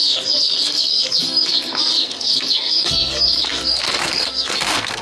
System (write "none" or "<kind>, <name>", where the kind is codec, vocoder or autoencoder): codec, SNAC